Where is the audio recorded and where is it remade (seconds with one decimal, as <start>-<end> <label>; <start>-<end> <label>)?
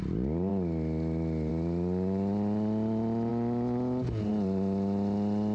0.0-5.5 recorded